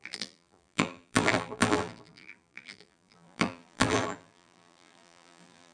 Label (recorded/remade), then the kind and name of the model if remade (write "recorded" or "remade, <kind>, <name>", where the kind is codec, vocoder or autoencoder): remade, vocoder, BigVGAN v2